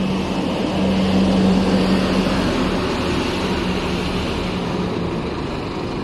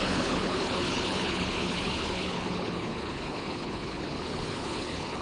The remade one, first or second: second